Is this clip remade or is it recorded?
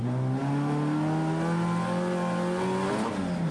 recorded